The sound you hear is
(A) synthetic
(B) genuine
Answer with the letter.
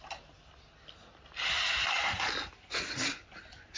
B